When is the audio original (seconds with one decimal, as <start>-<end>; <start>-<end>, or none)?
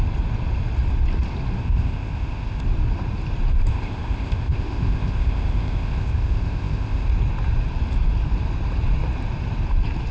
0.0-1.6; 2.6-3.7; 7.1-10.1